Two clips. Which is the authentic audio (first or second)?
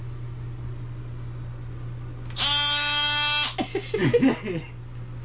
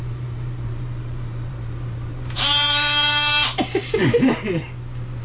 first